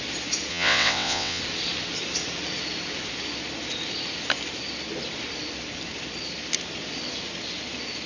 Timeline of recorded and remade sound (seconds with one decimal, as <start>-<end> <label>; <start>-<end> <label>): 0.0-0.5 recorded; 0.5-1.4 remade; 1.4-8.1 recorded